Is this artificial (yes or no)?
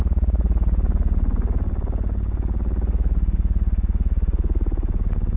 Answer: no